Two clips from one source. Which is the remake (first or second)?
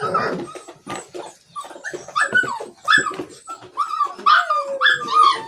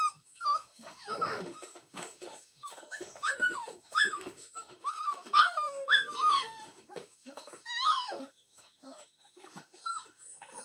second